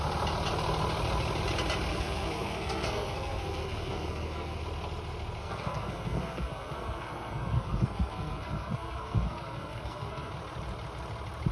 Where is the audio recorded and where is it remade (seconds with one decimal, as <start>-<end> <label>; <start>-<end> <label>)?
0.0-1.9 recorded; 1.9-4.6 remade; 4.6-5.4 recorded; 5.4-10.3 remade; 10.3-11.5 recorded